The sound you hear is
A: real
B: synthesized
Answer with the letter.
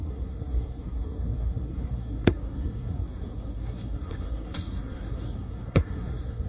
B